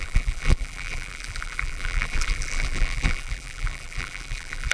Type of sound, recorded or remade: remade